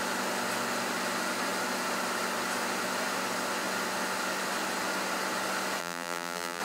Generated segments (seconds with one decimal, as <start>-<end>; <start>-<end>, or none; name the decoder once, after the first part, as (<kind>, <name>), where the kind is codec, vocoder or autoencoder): 5.8-6.6 (vocoder, BigVGAN v2)